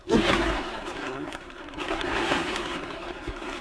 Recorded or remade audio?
remade